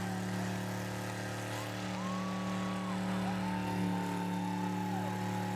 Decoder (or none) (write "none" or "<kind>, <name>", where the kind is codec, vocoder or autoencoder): none